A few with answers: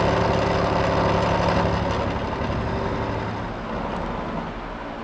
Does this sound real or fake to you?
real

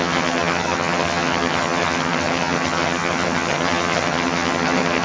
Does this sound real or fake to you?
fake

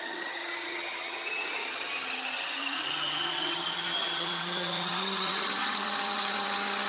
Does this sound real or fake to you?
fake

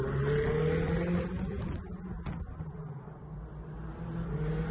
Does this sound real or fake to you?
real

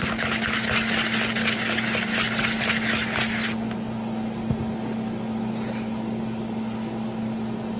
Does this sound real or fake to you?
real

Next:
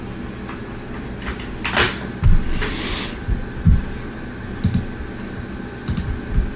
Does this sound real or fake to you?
real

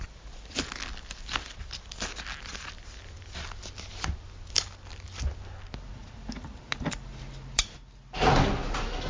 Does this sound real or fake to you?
real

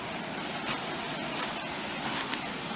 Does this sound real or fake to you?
real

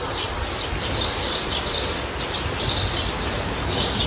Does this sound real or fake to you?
real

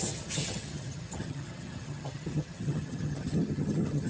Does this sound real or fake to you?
fake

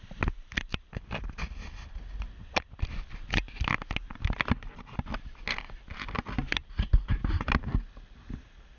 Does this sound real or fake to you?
real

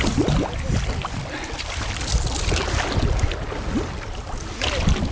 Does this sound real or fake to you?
real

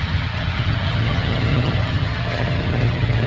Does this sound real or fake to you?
fake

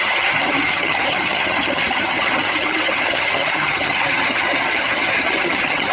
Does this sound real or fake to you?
fake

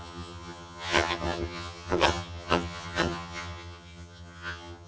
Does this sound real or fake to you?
fake